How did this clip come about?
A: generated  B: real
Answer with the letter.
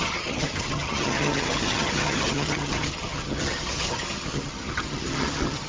A